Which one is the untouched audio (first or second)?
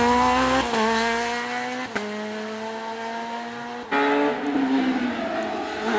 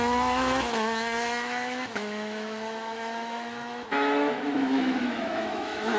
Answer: first